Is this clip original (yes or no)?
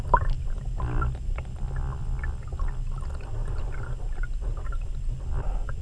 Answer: yes